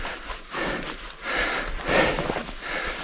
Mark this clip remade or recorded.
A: recorded